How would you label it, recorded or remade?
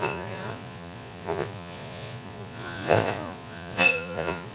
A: remade